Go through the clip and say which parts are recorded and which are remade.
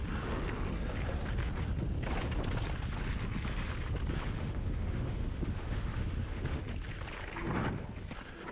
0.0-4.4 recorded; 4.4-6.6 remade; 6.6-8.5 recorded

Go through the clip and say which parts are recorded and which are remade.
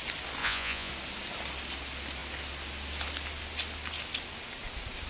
0.0-0.4 recorded; 0.4-0.9 remade; 0.9-5.1 recorded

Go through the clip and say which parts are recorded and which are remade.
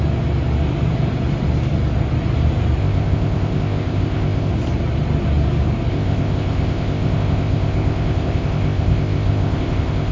0.0-2.8 recorded; 2.8-4.5 remade; 4.5-5.9 recorded; 5.9-10.1 remade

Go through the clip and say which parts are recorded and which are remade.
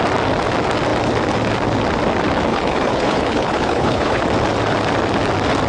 0.0-2.5 recorded; 2.5-4.2 remade; 4.2-5.7 recorded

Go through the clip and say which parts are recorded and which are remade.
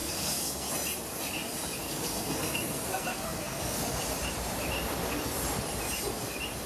0.0-0.7 remade; 0.7-1.8 recorded; 1.8-4.0 remade; 4.0-6.7 recorded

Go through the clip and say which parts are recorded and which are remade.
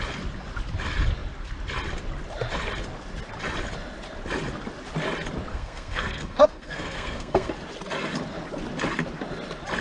0.0-5.5 recorded; 5.5-7.5 remade; 7.5-9.8 recorded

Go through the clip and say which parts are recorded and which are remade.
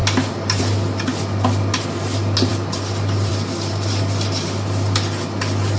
0.0-5.8 recorded